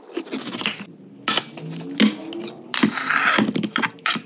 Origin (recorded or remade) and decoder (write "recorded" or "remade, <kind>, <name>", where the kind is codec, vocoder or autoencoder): recorded